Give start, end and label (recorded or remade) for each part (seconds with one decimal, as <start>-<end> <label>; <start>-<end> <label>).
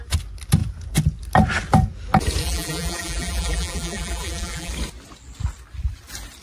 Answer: 0.0-2.4 recorded; 2.4-4.7 remade; 4.7-6.4 recorded